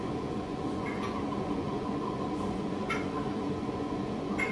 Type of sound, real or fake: fake